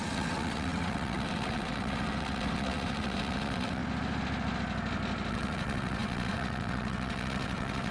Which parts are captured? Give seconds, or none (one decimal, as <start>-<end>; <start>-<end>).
3.8-5.3